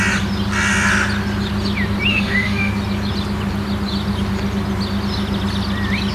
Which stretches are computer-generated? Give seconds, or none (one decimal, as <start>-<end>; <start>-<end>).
2.1-2.7